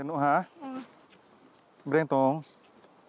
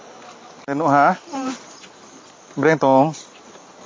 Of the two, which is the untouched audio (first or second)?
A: first